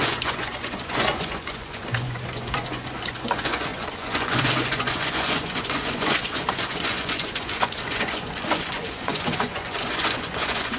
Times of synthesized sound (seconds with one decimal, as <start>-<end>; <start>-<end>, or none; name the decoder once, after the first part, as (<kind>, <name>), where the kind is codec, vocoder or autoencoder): 0.0-10.8 (vocoder, Vocos)